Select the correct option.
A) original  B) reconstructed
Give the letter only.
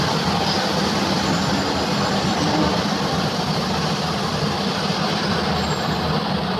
B